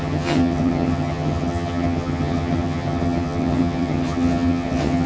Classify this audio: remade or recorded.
remade